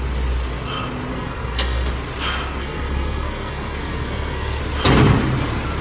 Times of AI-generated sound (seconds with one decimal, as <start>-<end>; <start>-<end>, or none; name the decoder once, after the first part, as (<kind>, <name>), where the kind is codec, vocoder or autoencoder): 1.1-1.9 (codec, SNAC); 2.6-4.6